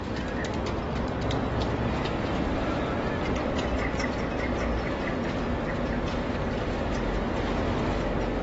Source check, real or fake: real